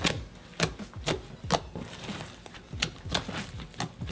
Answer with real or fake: real